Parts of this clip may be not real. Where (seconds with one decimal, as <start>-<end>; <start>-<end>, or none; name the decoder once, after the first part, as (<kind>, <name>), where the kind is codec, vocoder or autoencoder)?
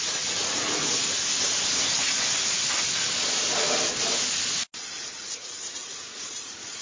0.0-0.9 (vocoder, Vocos); 5.0-6.8